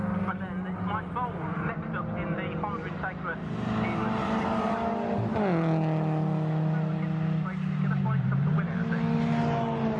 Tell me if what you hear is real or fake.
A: real